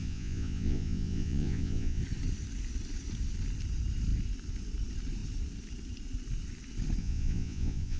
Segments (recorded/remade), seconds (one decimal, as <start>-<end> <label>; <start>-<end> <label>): 0.0-2.0 remade; 2.0-7.0 recorded; 7.0-8.0 remade